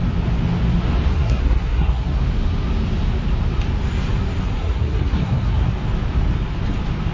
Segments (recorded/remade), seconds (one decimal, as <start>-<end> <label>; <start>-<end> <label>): 0.0-1.1 recorded; 1.1-2.2 remade; 2.2-4.4 recorded; 4.4-5.7 remade; 5.7-7.1 recorded